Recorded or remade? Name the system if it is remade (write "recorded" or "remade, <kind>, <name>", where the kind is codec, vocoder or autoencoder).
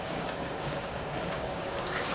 remade, codec, DAC